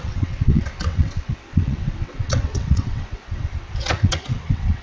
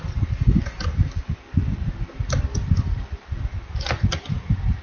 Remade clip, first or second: first